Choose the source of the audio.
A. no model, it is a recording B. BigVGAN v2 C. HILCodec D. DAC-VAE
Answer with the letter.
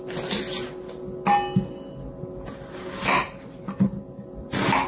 A